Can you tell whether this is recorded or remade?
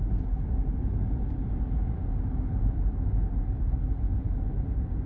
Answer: recorded